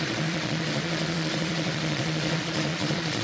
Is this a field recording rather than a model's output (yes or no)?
no